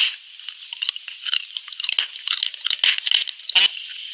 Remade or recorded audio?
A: recorded